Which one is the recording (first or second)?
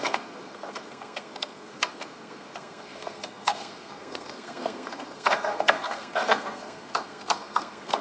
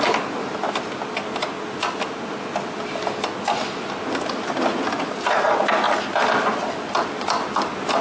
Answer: second